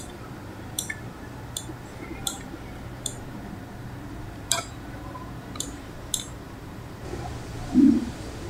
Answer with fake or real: fake